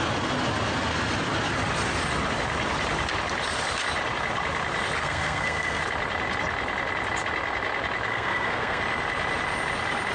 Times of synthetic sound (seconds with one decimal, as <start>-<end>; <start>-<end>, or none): 5.0-5.8; 8.1-8.8